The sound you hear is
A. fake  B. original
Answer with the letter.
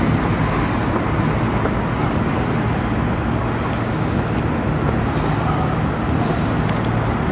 B